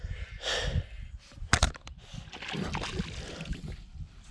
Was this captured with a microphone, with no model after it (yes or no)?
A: yes